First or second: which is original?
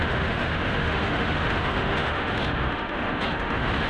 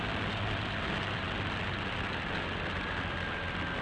second